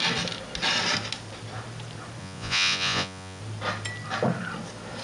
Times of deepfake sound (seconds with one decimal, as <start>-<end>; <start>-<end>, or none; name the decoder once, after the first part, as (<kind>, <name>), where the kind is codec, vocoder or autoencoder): 2.2-3.4 (vocoder, Vocos)